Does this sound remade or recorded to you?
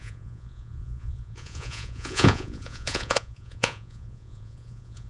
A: remade